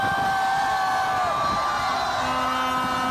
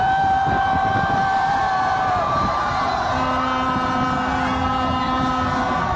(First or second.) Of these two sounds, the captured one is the first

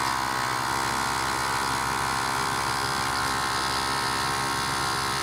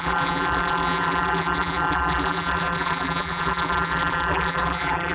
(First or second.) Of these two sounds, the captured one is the first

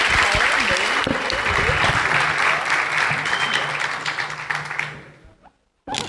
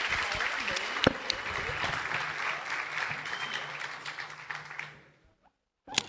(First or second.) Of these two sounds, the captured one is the first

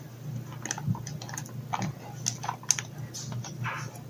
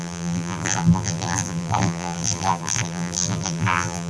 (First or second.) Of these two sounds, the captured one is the first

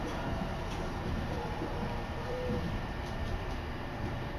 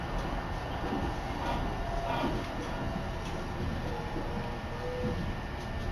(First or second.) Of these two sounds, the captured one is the second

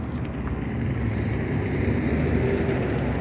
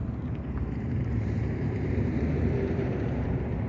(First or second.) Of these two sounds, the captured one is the first